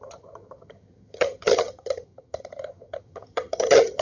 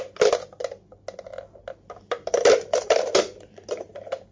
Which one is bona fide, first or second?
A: second